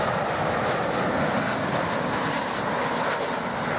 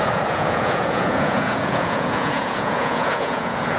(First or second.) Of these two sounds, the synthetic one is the second